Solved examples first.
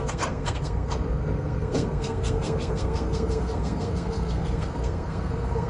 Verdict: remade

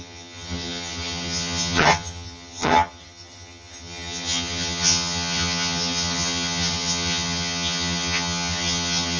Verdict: remade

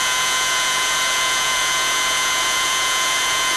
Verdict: remade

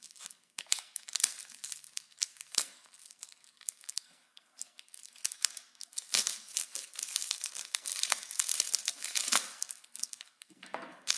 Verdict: remade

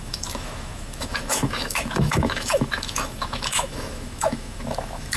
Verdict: remade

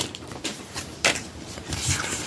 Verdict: remade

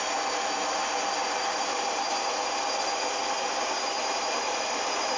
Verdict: recorded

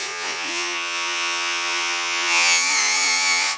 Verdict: remade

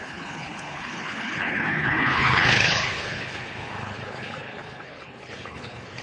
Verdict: remade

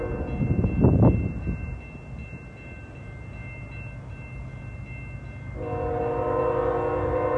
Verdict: recorded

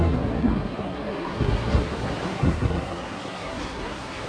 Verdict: remade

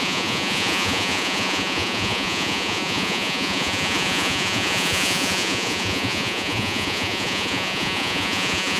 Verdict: remade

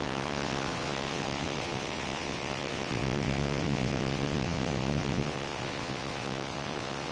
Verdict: remade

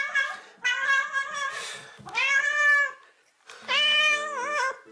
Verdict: recorded